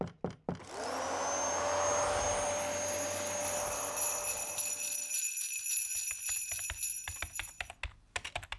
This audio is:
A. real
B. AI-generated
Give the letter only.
A